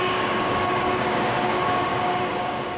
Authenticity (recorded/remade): remade